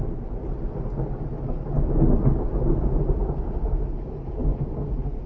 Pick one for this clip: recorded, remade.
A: recorded